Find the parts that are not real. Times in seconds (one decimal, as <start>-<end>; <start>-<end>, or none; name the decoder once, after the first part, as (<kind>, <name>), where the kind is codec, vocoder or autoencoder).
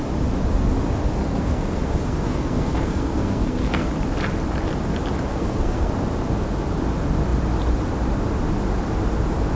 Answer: 1.2-3.9 (codec, SNAC); 5.3-5.9